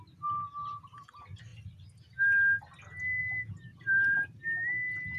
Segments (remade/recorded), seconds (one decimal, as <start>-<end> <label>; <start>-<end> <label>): 0.0-3.7 recorded; 3.7-4.4 remade; 4.4-5.2 recorded